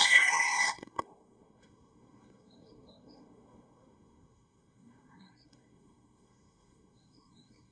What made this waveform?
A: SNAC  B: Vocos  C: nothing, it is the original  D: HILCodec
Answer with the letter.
A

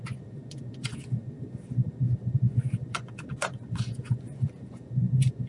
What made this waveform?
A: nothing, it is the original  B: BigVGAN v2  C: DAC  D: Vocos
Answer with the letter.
D